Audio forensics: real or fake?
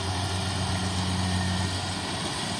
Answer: real